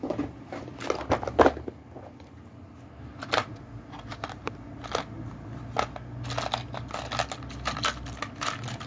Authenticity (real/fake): real